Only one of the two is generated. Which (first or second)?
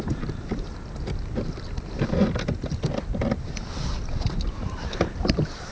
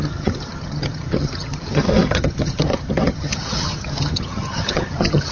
second